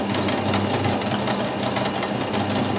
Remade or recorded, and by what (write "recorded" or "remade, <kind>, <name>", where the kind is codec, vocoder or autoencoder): recorded